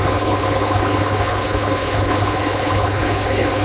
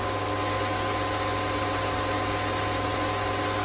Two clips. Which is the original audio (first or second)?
second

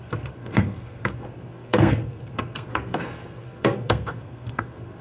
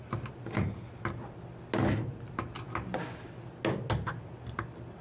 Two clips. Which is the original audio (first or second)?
second